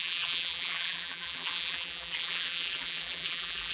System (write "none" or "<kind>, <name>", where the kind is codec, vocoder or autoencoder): vocoder, BigVGAN v2